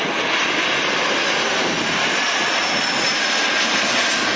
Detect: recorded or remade recorded